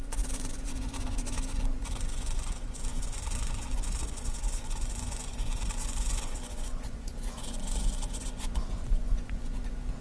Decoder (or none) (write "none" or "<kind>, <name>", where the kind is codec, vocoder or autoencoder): vocoder, Vocos